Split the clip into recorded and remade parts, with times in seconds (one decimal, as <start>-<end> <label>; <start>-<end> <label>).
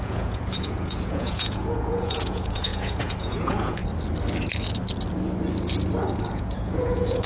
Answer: 0.0-3.8 remade; 3.8-6.3 recorded; 6.3-7.3 remade